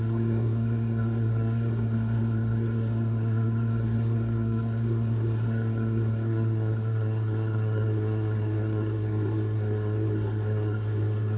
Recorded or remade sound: remade